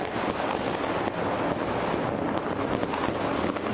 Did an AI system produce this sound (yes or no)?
no